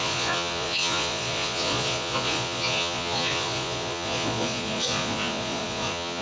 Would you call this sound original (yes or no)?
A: no